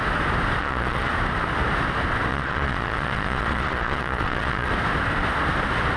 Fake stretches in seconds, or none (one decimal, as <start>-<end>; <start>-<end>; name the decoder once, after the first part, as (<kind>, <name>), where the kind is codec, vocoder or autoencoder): 0.6-1.1 (vocoder, Vocos); 2.3-4.7